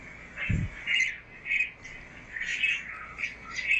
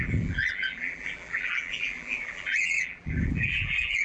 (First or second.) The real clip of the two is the first